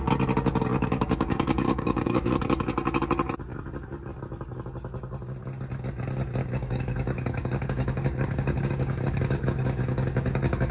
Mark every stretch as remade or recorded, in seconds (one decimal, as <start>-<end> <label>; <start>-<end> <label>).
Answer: 0.0-0.7 recorded; 0.7-2.4 remade; 2.4-6.4 recorded; 6.4-10.7 remade